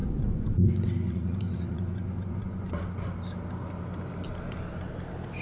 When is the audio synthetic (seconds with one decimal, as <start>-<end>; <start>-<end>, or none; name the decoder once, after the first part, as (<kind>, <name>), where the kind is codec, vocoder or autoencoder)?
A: 0.0-2.8 (vocoder, Vocos)